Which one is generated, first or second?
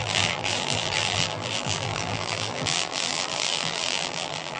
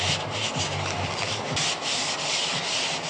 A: first